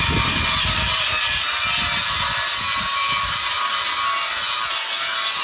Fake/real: real